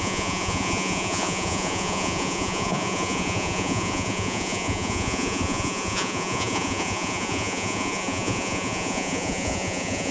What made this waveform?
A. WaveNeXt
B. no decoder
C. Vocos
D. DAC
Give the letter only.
C